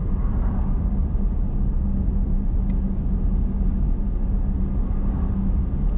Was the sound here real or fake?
real